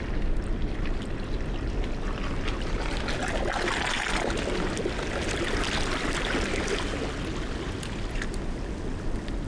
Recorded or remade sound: recorded